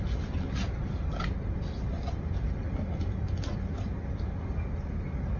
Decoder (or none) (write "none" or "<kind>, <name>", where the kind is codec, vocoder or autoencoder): none